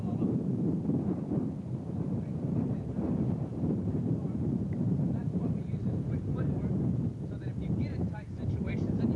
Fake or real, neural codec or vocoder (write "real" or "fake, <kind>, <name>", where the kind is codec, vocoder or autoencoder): fake, vocoder, BigVGAN v2